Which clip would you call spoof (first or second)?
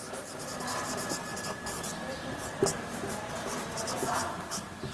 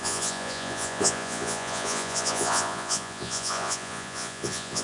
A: second